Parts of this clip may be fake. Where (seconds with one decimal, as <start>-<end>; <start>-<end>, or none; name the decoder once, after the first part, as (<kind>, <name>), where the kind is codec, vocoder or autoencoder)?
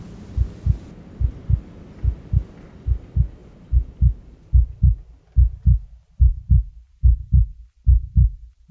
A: none